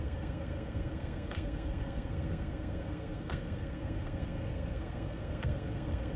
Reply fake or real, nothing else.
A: fake